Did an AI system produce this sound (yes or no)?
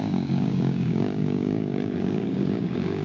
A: yes